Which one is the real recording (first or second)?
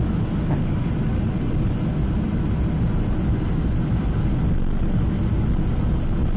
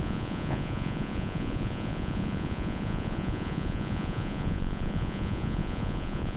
first